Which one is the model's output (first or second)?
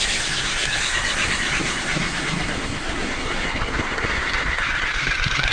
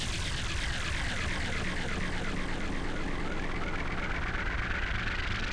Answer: first